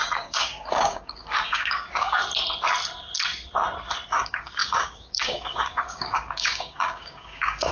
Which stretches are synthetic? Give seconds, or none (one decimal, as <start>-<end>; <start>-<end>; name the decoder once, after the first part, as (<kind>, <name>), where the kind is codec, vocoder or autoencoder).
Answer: 0.0-2.2 (codec, DAC); 4.1-7.7